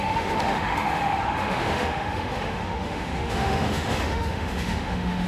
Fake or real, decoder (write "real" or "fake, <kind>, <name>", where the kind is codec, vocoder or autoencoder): fake, autoencoder, DAC-VAE